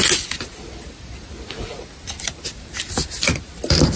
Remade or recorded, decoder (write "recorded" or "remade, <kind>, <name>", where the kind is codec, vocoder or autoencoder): recorded